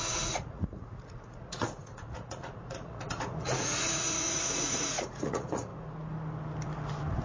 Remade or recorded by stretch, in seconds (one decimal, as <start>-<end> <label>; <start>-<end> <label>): 0.0-5.7 remade; 5.7-7.2 recorded